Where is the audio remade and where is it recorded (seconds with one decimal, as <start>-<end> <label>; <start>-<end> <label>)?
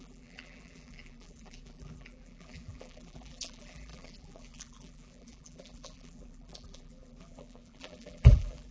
0.0-8.7 remade